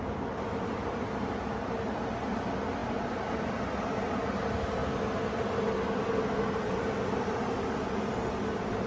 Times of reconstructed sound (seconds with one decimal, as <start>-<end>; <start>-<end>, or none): none